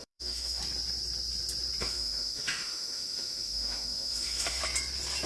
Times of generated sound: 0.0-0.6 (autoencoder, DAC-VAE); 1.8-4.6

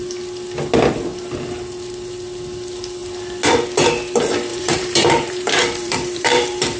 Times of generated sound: 4.5-6.8 (vocoder, BigVGAN v2)

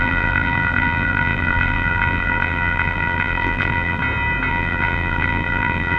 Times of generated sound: 0.0-4.0 (vocoder, BigVGAN v2); 4.5-6.0

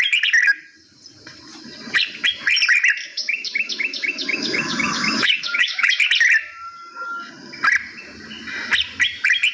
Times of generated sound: 3.1-5.9 (autoencoder, DAC-VAE)

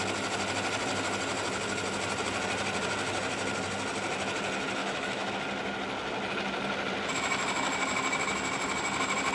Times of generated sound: 4.8-5.3 (autoencoder, DAC-VAE)

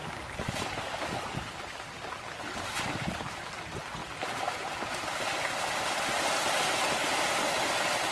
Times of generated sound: none

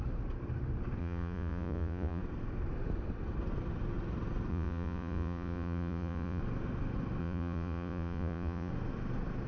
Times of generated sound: 1.0-2.2 (vocoder, Vocos); 4.5-6.4; 7.2-8.7

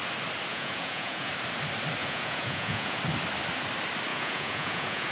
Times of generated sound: 0.5-1.3 (vocoder, Vocos); 2.0-3.0; 4.1-5.1